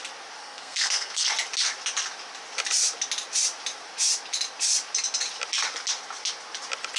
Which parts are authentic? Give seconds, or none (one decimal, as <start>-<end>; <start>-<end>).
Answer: 0.0-0.4; 1.3-7.0